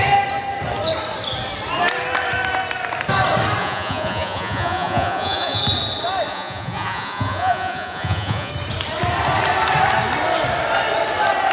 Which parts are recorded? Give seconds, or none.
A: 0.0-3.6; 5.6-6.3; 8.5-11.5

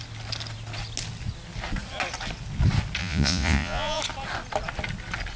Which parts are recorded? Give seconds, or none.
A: 0.0-3.0; 4.0-5.4

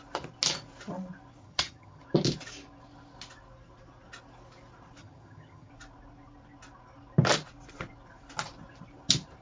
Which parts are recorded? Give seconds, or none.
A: 0.0-1.4; 2.0-5.0; 5.7-9.4